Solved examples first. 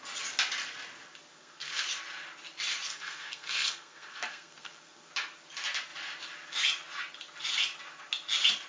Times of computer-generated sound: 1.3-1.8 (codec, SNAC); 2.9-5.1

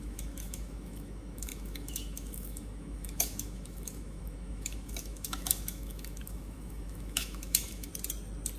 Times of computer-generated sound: 0.0-7.9 (autoencoder, DAC-VAE)